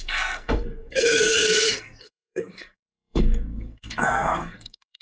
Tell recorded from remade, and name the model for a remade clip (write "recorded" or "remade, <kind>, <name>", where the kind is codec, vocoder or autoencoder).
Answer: remade, codec, SNAC